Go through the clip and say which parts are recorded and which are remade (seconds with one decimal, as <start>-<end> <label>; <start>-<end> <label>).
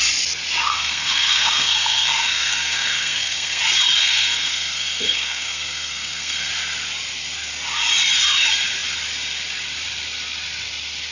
0.0-0.7 recorded; 0.7-3.6 remade; 3.6-4.0 recorded; 4.0-6.5 remade; 6.5-11.1 recorded